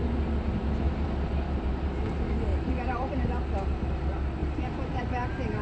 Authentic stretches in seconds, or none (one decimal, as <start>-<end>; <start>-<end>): 0.0-0.6; 1.7-2.5; 3.1-4.4; 5.0-5.6